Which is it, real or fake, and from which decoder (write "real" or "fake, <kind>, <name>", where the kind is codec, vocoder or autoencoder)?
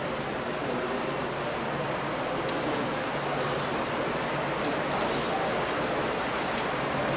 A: real